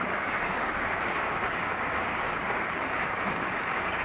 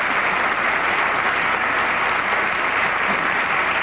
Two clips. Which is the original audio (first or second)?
second